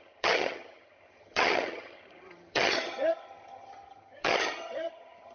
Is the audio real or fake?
fake